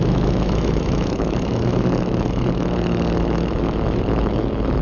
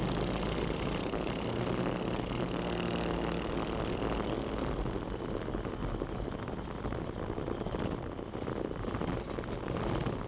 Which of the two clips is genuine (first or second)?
second